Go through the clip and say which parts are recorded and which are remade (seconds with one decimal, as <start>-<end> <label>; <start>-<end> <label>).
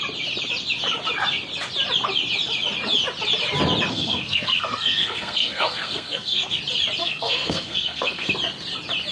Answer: 0.0-3.9 recorded; 3.9-6.6 remade; 6.6-7.0 recorded; 7.0-8.3 remade; 8.3-9.1 recorded